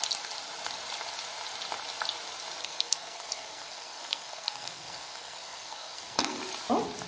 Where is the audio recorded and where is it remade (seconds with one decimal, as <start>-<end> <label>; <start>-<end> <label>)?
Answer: 0.0-2.6 recorded; 2.6-6.4 remade; 6.4-7.1 recorded